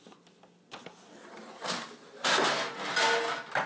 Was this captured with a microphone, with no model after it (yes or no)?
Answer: yes